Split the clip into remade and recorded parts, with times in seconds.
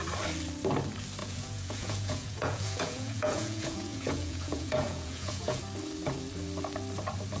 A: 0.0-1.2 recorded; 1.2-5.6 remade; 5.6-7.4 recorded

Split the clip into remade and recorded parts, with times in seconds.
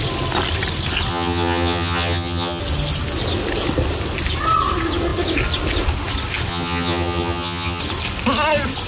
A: 0.0-1.1 recorded; 1.1-2.6 remade; 2.6-6.5 recorded; 6.5-7.8 remade; 7.8-8.9 recorded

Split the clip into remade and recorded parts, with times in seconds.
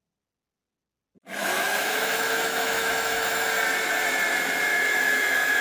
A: 0.0-1.4 recorded; 1.4-3.5 remade; 3.5-4.7 recorded; 4.7-5.6 remade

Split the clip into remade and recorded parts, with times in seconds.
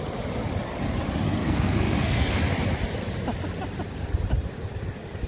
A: 0.0-1.4 recorded; 1.4-2.4 remade; 2.4-5.3 recorded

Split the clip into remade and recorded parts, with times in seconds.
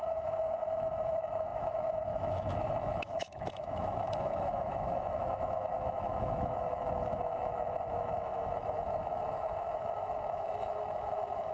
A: 0.0-11.5 remade